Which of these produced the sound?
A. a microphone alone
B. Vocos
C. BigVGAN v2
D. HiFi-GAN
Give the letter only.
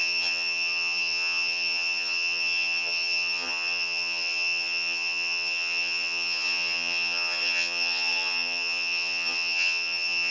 D